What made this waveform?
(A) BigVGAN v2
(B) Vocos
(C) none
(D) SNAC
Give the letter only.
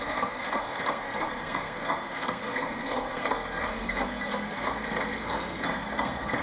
D